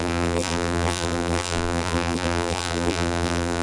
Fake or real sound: fake